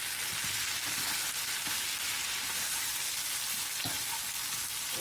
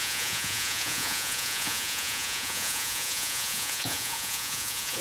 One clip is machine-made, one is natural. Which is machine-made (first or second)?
second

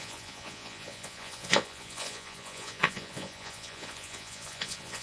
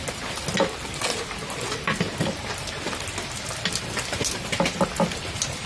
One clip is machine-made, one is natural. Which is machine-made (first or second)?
first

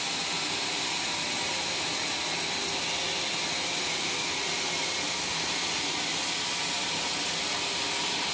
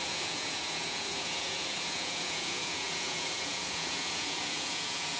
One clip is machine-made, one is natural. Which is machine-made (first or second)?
second